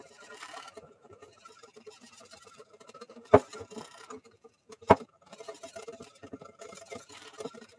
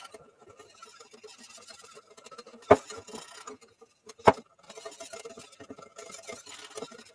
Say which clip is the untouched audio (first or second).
second